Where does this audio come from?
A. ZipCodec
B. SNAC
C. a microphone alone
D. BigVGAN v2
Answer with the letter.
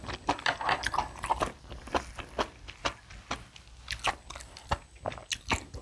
C